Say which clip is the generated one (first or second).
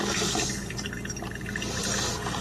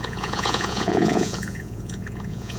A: second